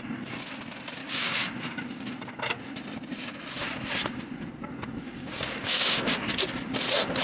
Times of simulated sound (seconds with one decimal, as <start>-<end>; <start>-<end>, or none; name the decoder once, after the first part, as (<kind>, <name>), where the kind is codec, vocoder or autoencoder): 1.0-1.5 (codec, DAC); 5.2-6.3